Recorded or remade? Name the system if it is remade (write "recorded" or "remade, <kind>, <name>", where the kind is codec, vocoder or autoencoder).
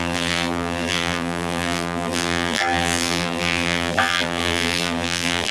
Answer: remade, vocoder, BigVGAN v2